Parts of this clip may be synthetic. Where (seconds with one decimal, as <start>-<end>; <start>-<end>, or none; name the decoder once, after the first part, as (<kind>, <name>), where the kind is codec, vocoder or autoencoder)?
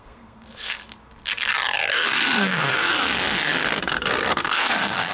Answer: 0.0-0.8 (codec, SNAC); 1.9-2.9; 3.8-5.1